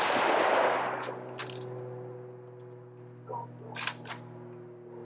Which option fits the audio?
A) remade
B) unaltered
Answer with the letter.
B